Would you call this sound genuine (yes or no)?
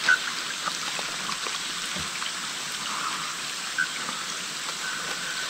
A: yes